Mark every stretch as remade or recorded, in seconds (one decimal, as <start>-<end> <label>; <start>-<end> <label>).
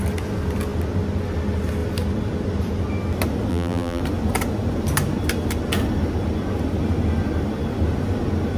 0.0-3.5 recorded; 3.5-4.0 remade; 4.0-8.6 recorded